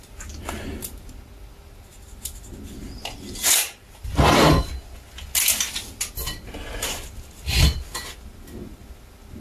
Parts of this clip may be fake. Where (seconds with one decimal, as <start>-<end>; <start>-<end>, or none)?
none